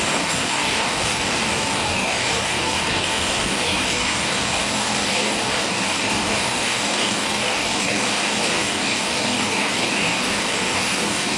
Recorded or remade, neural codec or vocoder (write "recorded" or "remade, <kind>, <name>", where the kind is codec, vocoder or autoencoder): remade, codec, DAC